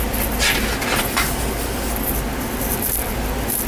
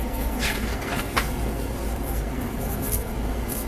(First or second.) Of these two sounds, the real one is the first